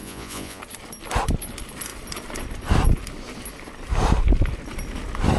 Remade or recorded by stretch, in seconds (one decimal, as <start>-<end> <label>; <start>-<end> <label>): 0.0-0.6 remade; 0.6-5.4 recorded